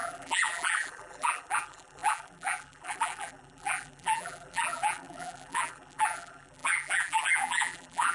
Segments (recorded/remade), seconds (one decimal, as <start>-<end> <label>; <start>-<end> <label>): 0.0-8.1 remade